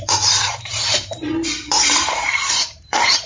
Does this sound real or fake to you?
fake